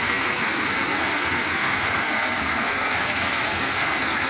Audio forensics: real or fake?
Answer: fake